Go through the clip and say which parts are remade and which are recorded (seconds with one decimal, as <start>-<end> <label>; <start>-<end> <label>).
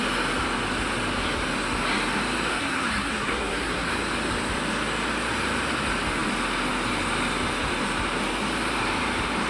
0.0-2.5 recorded; 2.5-3.9 remade; 3.9-9.5 recorded